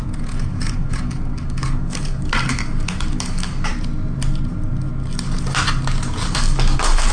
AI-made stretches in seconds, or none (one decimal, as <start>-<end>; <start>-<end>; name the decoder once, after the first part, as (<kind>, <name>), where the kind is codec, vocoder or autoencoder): 0.0-3.7 (codec, DAC); 6.3-7.1